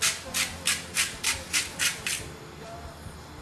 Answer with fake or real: real